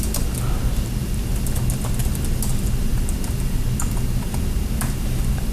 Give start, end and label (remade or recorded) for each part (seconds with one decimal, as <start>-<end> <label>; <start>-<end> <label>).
0.0-5.5 recorded